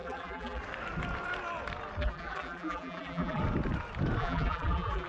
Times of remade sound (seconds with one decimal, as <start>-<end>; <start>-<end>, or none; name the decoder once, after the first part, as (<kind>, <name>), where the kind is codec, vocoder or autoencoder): 0.0-0.6 (vocoder, BigVGAN v2); 2.0-3.4; 4.2-5.1